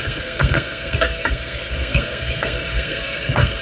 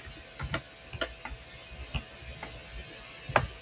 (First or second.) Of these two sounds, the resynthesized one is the first